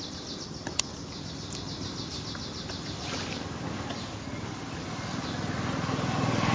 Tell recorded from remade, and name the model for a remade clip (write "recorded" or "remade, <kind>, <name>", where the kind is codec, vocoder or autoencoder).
recorded